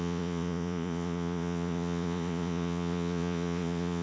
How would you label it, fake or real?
fake